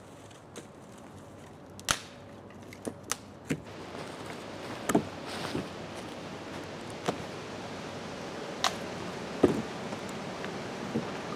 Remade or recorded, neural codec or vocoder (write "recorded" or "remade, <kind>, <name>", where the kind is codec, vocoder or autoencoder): recorded